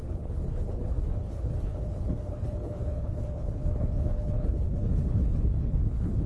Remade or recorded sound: remade